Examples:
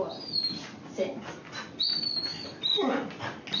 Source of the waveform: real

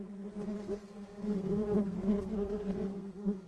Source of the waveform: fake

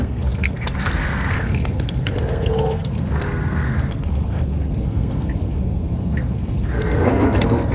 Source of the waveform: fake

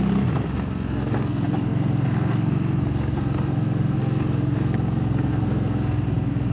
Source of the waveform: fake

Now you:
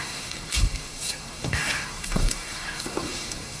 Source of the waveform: fake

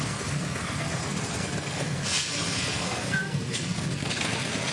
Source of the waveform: fake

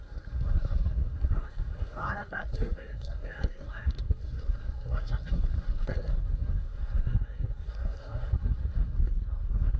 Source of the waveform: fake